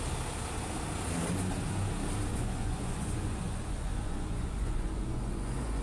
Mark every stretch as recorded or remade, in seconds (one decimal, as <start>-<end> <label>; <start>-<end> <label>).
0.0-2.3 recorded; 2.3-5.8 remade